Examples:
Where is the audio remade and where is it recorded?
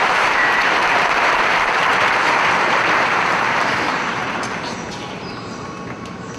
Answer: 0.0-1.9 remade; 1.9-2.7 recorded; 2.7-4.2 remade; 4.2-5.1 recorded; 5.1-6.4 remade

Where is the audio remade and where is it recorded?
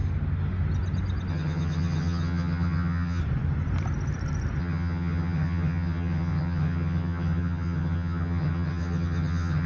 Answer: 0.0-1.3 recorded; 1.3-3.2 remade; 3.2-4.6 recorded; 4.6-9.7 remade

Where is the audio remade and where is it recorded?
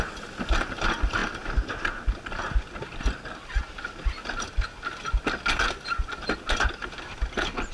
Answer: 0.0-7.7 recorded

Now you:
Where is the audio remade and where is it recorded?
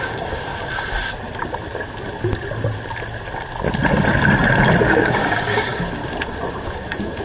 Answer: 0.0-0.5 remade; 0.5-4.8 recorded; 4.8-6.0 remade; 6.0-6.5 recorded; 6.5-7.2 remade